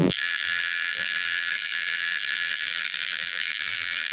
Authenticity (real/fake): fake